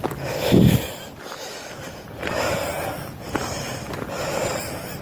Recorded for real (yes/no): no